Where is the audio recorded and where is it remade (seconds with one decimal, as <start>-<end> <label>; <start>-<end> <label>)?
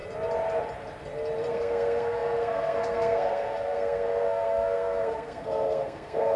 0.0-1.5 recorded; 1.5-6.4 remade